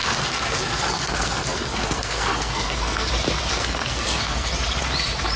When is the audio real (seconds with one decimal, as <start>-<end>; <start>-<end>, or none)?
3.1-3.5; 4.5-5.4